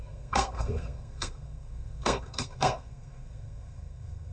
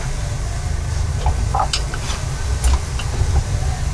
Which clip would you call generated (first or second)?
first